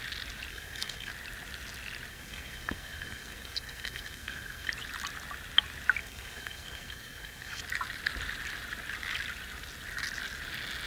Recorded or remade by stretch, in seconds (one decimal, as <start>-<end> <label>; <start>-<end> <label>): 0.0-0.5 recorded; 0.5-1.1 remade; 1.1-2.1 recorded; 2.1-4.7 remade; 4.7-6.0 recorded; 6.0-7.6 remade; 7.6-10.9 recorded